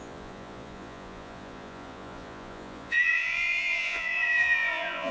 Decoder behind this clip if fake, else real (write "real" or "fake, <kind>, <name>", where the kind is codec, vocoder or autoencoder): fake, vocoder, Vocos